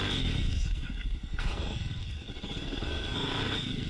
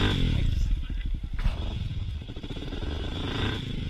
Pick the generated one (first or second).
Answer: first